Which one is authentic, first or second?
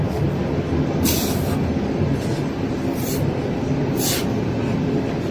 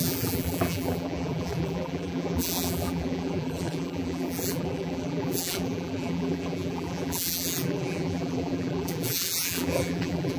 first